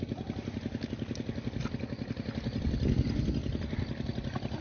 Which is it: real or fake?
real